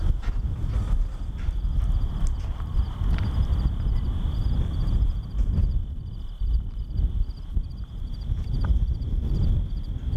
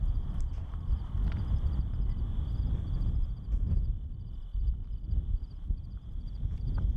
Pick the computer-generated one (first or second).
second